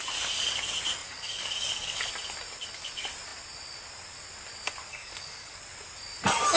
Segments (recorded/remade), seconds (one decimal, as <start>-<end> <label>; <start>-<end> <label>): 0.0-1.0 recorded; 1.0-2.1 remade; 2.1-4.9 recorded; 4.9-5.6 remade; 5.6-6.6 recorded